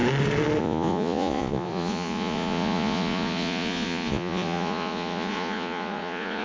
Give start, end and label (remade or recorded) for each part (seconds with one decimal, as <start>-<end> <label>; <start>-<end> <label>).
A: 0.0-0.6 recorded; 0.6-6.4 remade